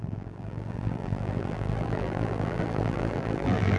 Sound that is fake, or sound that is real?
fake